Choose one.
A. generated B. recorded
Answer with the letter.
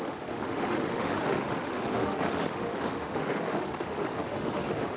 A